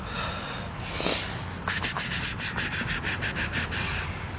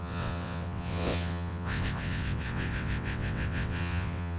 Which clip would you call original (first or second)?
first